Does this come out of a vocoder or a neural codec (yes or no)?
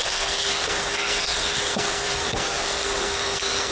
yes